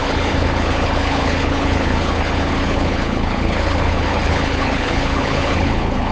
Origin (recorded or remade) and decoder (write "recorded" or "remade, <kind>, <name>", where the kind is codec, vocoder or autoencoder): remade, codec, HILCodec